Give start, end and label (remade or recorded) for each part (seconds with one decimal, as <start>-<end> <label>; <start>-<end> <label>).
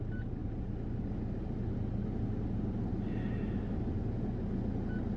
0.0-5.2 recorded